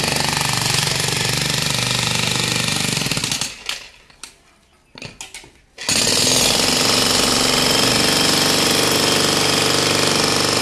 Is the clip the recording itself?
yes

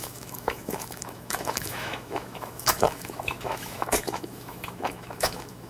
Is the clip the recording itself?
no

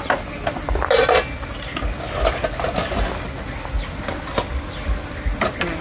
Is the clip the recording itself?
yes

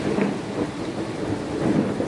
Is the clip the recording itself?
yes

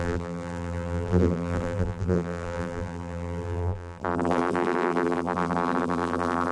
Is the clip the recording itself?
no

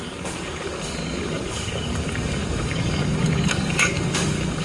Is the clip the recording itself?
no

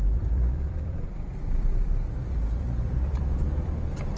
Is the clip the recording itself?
no